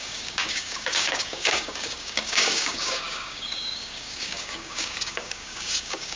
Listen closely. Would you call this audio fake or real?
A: fake